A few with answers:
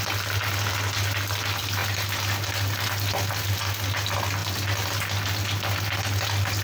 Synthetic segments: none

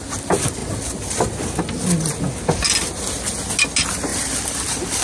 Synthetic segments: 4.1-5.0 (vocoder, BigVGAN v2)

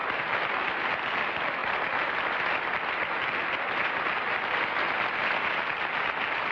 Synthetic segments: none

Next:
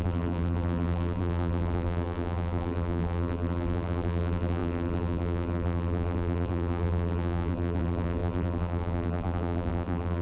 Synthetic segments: 0.0-10.2 (vocoder, BigVGAN v2)

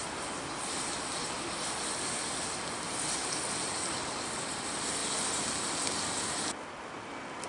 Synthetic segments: none

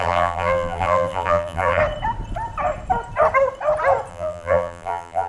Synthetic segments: 0.0-1.8 (vocoder, BigVGAN v2); 4.1-5.3